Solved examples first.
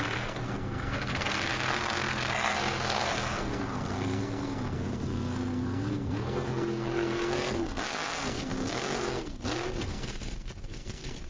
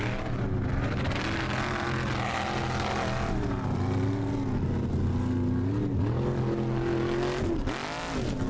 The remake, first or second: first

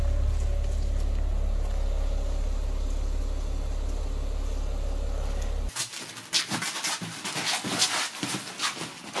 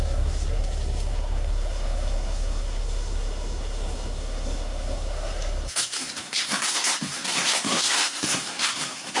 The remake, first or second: second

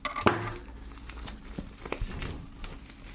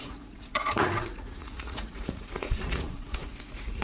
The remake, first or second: second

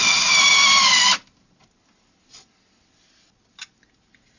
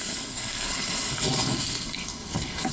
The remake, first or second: second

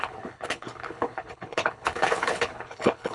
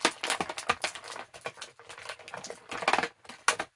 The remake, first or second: first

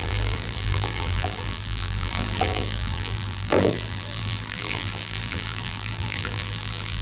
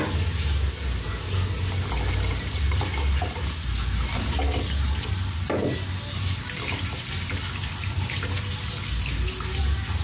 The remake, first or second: first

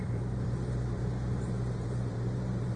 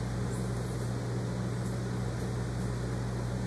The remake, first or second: first